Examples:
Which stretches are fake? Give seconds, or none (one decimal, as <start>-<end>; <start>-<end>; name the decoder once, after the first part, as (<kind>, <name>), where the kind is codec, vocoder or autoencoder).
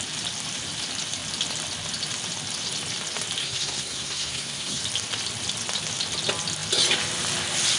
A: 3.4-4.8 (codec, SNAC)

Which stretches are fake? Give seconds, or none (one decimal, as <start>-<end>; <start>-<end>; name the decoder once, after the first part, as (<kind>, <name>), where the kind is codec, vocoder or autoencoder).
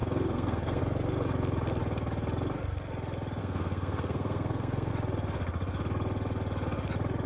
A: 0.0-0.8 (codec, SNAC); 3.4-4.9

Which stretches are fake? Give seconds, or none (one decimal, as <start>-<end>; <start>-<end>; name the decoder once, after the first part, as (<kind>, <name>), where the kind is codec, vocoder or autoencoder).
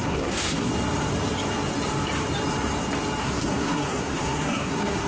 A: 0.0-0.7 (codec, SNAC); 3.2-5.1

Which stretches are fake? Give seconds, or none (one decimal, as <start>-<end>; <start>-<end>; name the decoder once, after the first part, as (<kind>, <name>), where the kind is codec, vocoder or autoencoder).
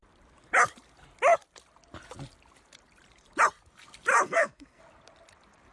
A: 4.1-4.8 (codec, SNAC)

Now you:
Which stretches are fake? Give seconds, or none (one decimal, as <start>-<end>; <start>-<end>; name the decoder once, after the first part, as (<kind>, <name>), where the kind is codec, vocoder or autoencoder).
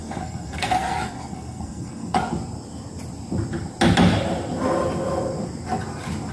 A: 0.0-2.2 (codec, SNAC)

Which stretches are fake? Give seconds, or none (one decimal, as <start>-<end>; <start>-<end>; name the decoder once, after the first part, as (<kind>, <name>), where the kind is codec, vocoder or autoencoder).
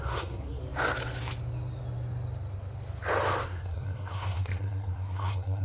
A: 0.0-0.6 (codec, SNAC); 3.4-5.6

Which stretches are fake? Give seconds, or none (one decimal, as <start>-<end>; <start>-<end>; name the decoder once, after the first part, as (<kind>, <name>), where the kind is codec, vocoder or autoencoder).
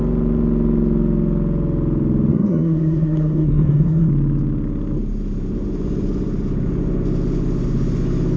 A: 2.3-4.1 (codec, SNAC)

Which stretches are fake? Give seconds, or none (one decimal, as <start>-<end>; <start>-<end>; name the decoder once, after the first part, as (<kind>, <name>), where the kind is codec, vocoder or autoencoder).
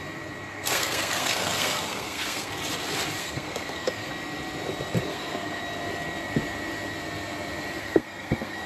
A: 0.5-2.5 (codec, SNAC); 3.2-4.1; 5.1-5.6; 7.8-8.7